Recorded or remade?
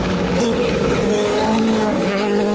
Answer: remade